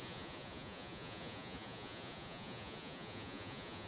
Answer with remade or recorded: remade